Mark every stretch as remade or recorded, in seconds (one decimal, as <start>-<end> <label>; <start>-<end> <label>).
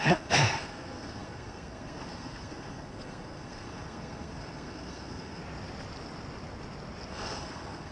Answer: 0.0-5.4 remade; 5.4-7.1 recorded; 7.1-7.9 remade